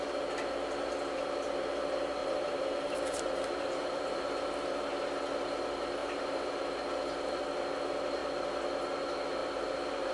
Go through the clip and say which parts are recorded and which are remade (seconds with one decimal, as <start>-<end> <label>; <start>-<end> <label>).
0.0-2.2 recorded; 2.2-4.5 remade; 4.5-6.0 recorded; 6.0-6.5 remade; 6.5-9.4 recorded; 9.4-10.1 remade